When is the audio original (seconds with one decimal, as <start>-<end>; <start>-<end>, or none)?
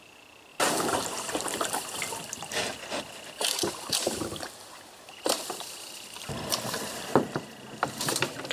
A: 0.0-0.5; 2.1-3.4; 7.1-8.5